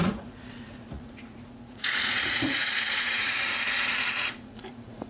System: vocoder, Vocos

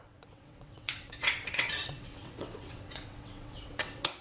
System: vocoder, WaveNeXt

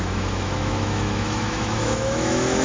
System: autoencoder, DAC-VAE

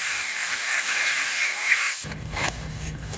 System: codec, DAC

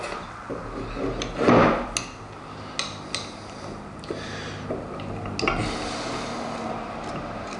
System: none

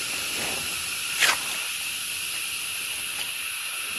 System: none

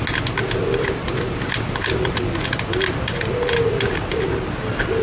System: none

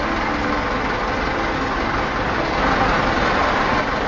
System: none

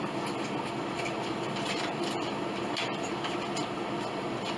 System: none